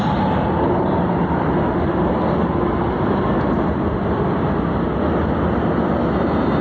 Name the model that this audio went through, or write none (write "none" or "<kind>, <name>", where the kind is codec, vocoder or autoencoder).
none